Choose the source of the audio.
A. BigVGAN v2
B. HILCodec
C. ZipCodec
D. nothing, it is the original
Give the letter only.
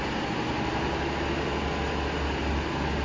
D